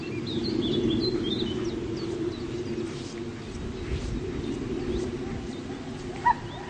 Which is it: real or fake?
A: real